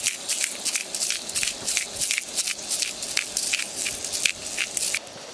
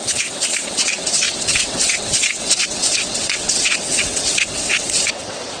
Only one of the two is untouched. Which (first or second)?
first